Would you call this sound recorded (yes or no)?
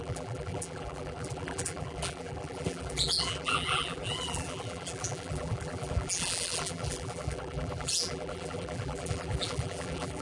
no